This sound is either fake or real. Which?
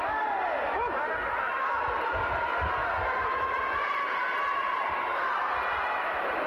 real